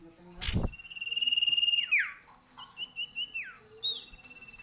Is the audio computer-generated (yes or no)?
no